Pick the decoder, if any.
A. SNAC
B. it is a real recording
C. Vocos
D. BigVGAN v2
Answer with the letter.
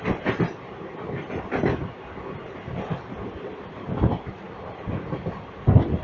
B